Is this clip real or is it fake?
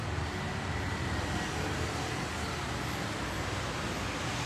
real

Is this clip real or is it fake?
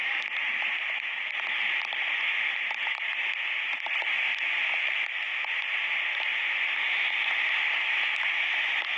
real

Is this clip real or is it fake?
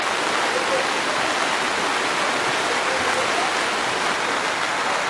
real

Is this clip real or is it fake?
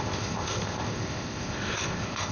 fake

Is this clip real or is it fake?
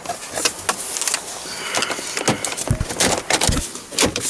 real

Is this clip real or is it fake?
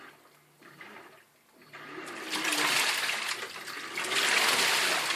real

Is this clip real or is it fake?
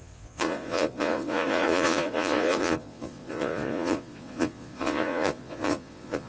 fake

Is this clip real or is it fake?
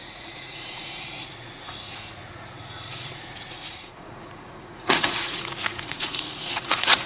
fake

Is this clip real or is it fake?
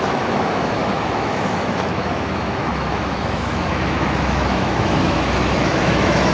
fake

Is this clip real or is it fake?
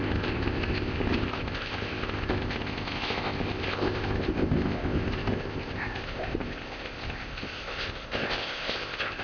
fake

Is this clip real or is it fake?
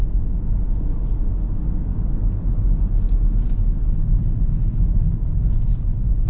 real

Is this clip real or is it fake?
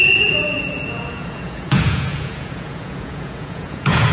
fake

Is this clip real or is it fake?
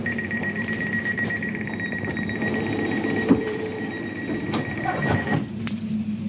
fake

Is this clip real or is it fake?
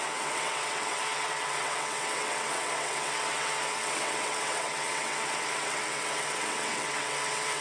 fake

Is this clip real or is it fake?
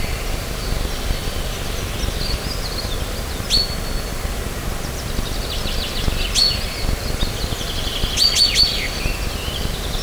real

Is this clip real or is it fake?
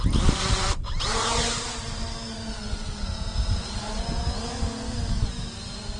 real